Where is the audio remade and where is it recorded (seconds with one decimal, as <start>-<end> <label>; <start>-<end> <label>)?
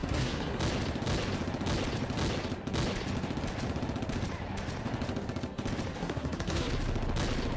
0.0-0.6 remade; 0.6-6.0 recorded; 6.0-6.7 remade; 6.7-7.6 recorded